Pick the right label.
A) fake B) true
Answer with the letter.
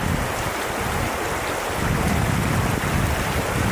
B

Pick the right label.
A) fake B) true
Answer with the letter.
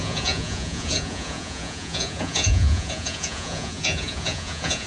A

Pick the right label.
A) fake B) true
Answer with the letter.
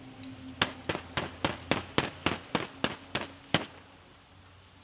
B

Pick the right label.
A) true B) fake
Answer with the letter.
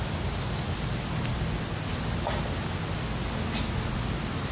A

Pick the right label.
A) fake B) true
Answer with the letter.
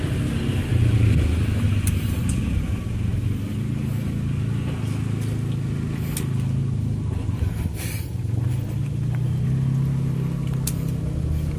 B